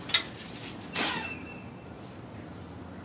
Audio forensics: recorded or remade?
recorded